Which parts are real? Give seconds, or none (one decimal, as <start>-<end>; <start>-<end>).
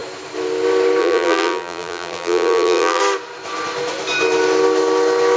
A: 0.0-1.0; 3.0-5.4